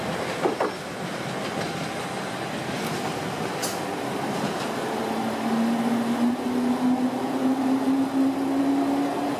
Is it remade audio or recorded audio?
recorded